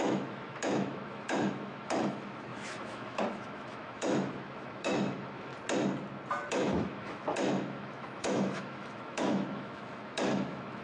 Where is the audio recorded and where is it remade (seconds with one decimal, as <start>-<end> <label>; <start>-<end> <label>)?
0.0-5.5 remade; 5.5-6.5 recorded; 6.5-10.8 remade